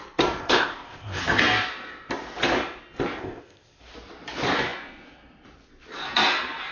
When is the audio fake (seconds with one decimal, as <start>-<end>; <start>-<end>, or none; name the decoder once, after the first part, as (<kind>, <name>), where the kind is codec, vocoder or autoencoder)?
0.4-1.2 (codec, ZipCodec); 3.2-3.8